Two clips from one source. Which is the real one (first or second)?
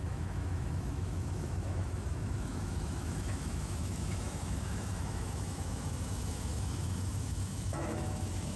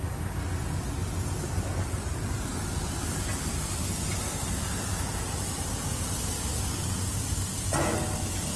second